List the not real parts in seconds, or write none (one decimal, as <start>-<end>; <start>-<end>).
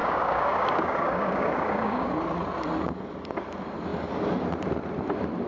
0.0-2.1